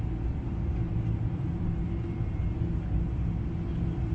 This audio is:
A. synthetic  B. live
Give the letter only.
B